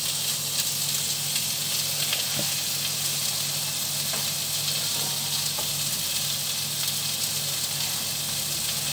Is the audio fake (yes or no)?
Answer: no